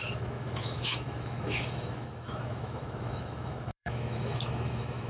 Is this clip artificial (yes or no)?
yes